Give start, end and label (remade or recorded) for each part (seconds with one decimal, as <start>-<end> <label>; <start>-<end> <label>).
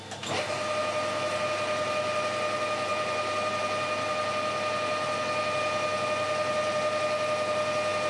0.0-8.1 recorded